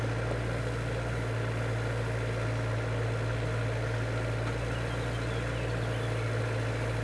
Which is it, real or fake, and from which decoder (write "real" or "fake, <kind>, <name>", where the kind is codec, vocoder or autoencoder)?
real